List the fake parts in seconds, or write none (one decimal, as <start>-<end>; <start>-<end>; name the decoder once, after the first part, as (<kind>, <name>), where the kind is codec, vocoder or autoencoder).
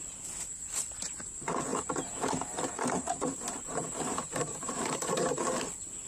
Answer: 1.7-5.4 (vocoder, BigVGAN v2)